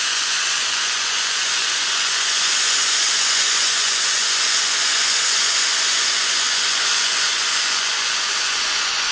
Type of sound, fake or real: fake